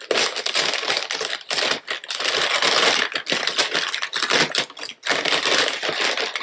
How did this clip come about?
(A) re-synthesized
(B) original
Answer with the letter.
B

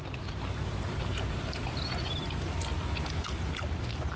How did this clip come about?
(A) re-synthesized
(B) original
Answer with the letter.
B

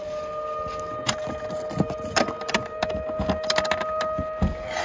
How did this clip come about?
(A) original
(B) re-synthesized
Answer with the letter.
A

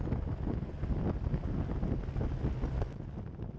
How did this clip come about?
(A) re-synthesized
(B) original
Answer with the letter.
B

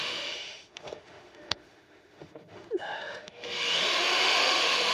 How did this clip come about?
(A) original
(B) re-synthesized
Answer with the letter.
B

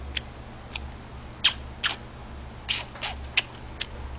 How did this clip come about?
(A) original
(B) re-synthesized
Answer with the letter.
A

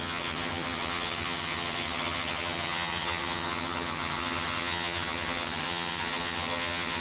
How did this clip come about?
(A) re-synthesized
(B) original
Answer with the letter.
A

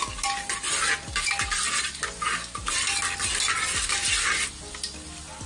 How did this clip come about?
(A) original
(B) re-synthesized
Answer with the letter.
A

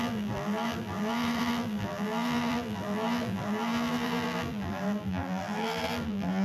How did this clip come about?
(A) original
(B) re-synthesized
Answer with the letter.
B